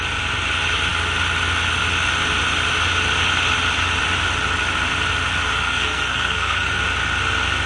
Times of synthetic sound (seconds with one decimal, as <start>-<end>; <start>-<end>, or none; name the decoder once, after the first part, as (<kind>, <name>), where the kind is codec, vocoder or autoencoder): 5.5-6.8 (codec, SNAC)